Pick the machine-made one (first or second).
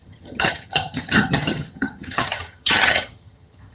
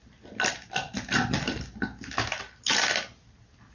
first